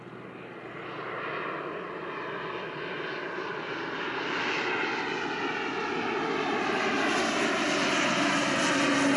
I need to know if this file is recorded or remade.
recorded